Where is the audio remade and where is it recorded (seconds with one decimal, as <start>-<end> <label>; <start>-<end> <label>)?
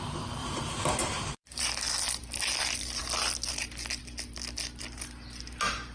0.0-0.4 recorded; 0.4-1.6 remade; 1.6-5.9 recorded